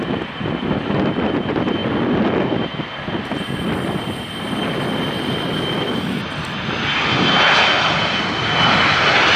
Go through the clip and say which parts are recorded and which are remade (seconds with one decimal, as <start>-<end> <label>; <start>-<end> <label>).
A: 0.0-9.4 recorded